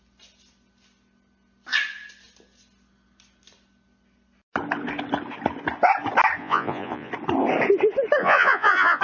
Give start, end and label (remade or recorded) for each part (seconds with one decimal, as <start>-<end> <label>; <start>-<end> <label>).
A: 0.0-6.4 recorded; 6.4-7.1 remade; 7.1-8.2 recorded; 8.2-9.0 remade

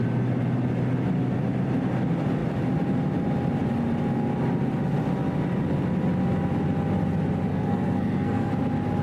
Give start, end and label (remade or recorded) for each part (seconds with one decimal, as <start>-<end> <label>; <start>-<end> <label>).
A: 0.0-7.5 recorded; 7.5-8.5 remade; 8.5-9.0 recorded